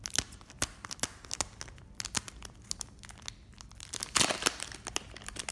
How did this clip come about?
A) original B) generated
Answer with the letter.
A